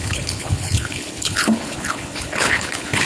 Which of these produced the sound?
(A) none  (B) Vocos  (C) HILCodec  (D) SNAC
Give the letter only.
C